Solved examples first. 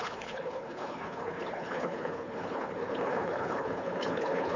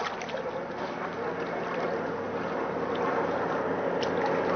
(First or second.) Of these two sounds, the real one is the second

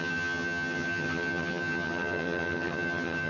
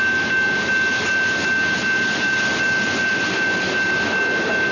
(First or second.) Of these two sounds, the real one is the second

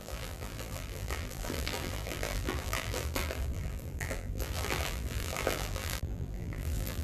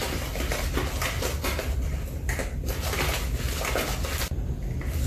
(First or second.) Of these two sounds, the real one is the second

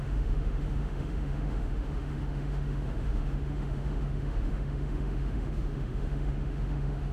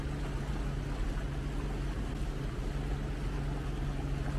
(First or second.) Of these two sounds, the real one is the second